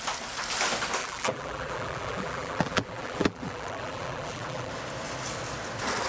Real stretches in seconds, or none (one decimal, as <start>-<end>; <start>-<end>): 0.0-1.0; 4.7-6.1